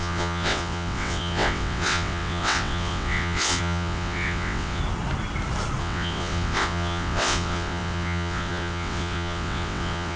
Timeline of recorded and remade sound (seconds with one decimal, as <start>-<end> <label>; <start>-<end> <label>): 0.0-4.8 remade; 4.8-5.8 recorded; 5.8-10.2 remade